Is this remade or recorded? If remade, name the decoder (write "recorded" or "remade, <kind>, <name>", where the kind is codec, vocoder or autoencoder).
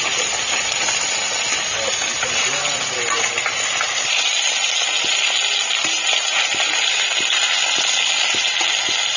recorded